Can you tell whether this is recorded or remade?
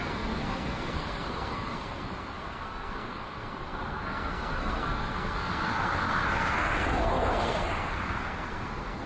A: remade